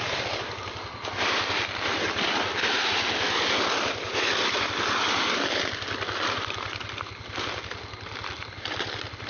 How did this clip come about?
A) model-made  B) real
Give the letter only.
B